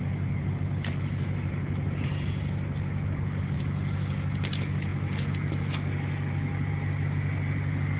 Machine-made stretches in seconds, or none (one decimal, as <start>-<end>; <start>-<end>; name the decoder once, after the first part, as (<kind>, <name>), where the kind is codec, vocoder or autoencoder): none